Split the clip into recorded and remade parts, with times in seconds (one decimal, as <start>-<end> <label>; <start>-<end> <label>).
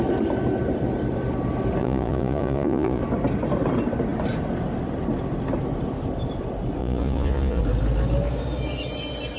0.0-1.8 recorded; 1.8-3.0 remade; 3.0-6.8 recorded; 6.8-7.6 remade; 7.6-9.4 recorded